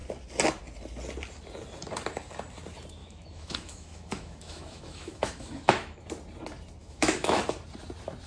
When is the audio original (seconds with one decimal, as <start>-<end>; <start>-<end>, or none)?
0.0-3.0; 6.0-6.8; 7.4-8.3